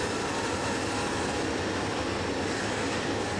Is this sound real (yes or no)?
yes